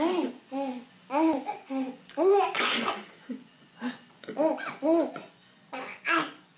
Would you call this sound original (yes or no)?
no